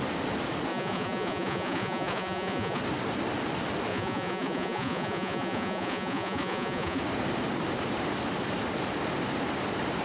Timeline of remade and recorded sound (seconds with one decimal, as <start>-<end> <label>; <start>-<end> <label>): 0.0-0.7 recorded; 0.7-2.8 remade; 2.8-3.9 recorded; 3.9-7.0 remade; 7.0-10.0 recorded